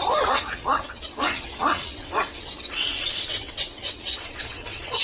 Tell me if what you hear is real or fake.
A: fake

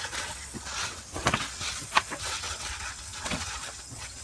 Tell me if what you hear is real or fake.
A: fake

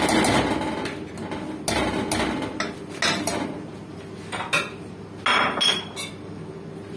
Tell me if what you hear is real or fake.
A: real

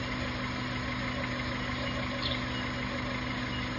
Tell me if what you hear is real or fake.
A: real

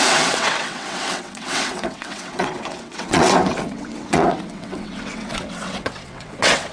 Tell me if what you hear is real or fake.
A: fake